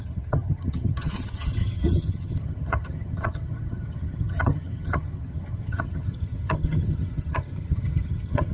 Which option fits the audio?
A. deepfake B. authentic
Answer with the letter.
A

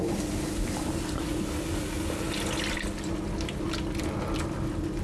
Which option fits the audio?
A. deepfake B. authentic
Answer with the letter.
B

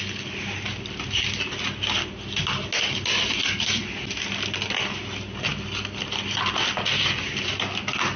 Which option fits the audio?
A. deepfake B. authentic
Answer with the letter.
B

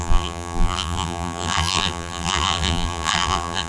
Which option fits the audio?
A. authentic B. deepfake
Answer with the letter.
B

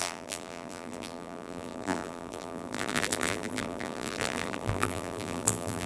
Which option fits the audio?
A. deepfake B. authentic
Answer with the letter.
A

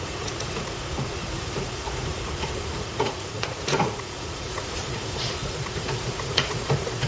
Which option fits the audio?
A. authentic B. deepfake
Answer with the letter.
B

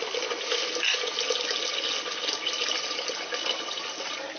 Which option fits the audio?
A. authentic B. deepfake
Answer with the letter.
A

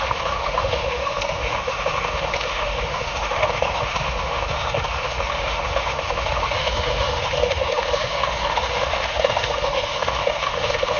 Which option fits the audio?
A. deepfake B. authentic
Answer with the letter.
A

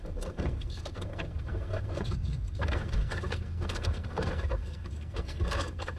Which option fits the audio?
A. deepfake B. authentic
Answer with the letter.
A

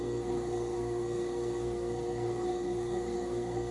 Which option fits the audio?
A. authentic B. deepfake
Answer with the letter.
B